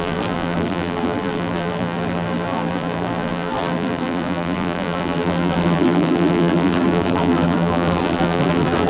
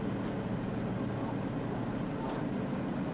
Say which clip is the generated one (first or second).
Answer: first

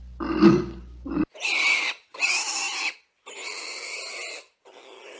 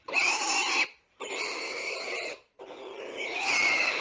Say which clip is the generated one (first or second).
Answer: second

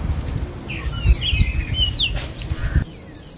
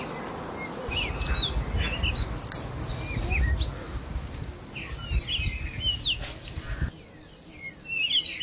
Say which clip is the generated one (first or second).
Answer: first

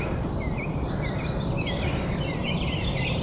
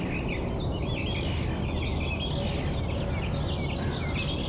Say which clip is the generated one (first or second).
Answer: first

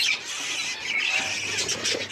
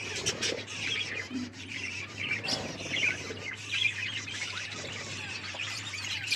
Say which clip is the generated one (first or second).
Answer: second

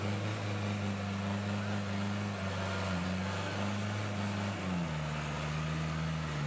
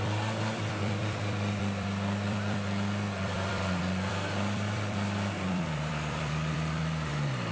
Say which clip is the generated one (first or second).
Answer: second